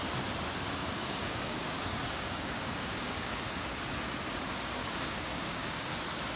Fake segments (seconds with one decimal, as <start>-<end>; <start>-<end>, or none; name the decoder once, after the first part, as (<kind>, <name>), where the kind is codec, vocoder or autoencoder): 0.8-3.7 (codec, DAC); 4.8-5.9